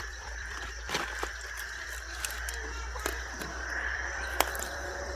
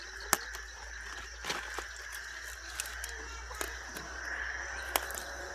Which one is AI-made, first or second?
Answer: first